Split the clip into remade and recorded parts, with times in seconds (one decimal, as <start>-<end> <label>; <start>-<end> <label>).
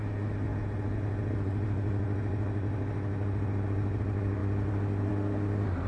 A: 0.0-5.9 recorded